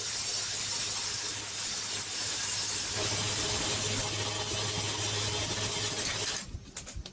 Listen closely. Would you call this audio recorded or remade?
recorded